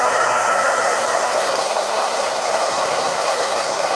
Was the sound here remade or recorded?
remade